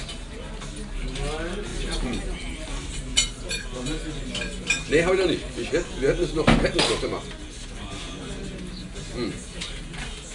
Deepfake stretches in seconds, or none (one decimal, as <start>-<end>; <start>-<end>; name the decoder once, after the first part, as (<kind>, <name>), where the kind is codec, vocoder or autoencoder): 1.7-3.6 (vocoder, BigVGAN v2)